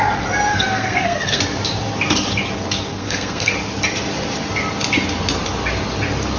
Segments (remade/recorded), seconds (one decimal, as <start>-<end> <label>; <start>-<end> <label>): 0.0-0.5 recorded; 0.5-1.4 remade; 1.4-2.9 recorded; 2.9-3.5 remade; 3.5-6.4 recorded